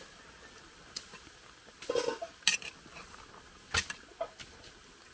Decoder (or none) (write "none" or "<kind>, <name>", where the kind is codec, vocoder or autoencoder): none